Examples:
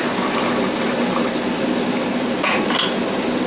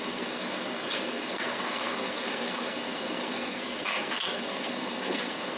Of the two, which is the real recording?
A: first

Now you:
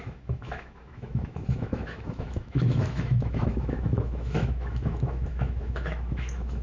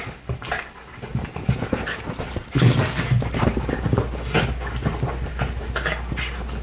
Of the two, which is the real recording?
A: second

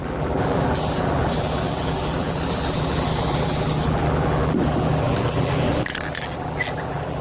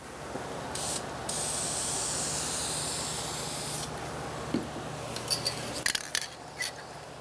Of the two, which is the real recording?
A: second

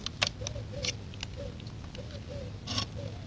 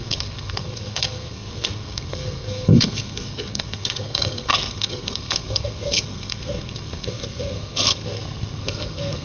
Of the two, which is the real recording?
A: first